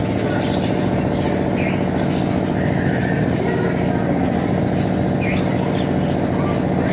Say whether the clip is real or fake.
real